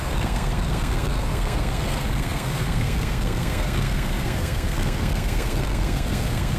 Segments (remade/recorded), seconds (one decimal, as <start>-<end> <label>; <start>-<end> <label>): 0.0-6.6 remade